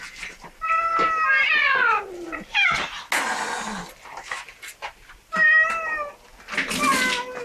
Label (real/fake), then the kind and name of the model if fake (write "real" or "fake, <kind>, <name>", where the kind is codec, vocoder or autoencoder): real